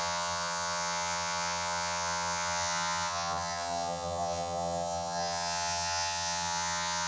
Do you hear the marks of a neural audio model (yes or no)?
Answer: yes